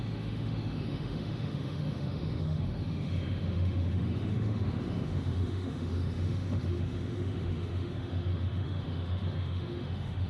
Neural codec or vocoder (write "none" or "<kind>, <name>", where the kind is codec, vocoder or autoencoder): autoencoder, DAC-VAE